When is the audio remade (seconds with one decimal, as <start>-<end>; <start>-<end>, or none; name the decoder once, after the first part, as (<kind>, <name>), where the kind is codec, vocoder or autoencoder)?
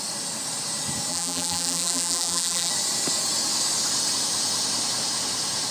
1.1-2.7 (vocoder, BigVGAN v2)